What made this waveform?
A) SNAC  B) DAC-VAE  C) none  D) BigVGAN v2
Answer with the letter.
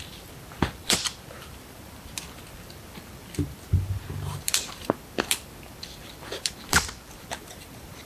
D